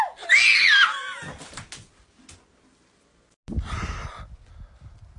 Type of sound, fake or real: real